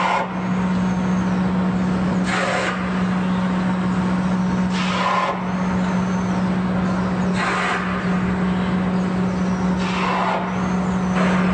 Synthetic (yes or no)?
no